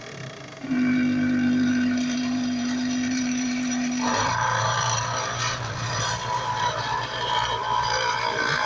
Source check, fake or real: fake